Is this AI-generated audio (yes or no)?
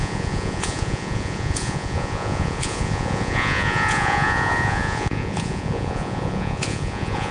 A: yes